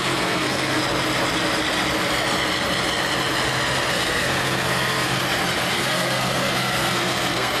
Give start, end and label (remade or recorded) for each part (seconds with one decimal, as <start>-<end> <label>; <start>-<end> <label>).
0.0-0.8 remade; 0.8-3.9 recorded; 3.9-5.2 remade; 5.2-5.7 recorded; 5.7-7.6 remade